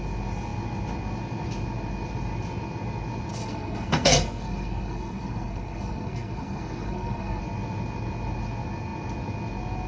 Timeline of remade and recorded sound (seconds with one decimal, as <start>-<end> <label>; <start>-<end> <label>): 0.0-3.3 recorded; 3.3-7.4 remade; 7.4-9.9 recorded